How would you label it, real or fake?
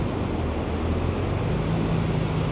real